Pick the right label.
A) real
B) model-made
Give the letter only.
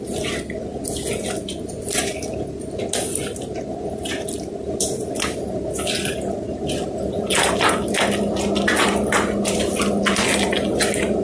A